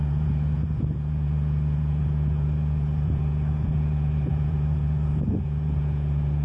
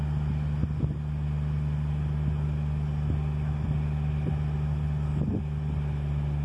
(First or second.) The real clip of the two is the second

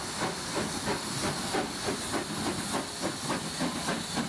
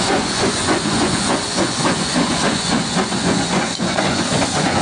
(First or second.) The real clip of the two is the first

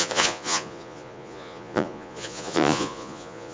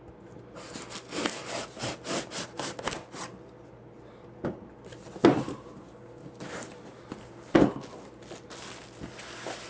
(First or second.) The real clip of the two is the second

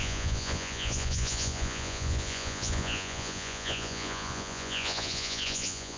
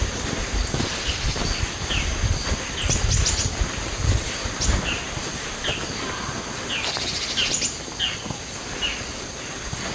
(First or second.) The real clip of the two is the second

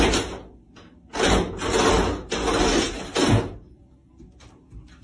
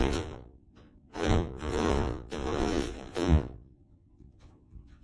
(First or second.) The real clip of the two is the first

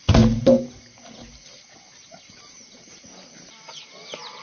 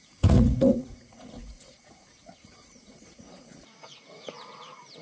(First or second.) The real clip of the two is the first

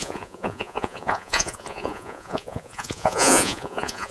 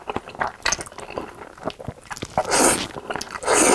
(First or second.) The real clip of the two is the second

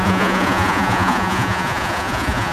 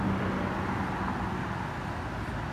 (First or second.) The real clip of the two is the second